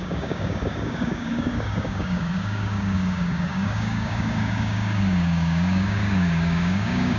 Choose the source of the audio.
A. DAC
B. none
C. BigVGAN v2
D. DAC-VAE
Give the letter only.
A